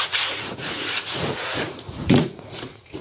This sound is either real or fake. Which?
fake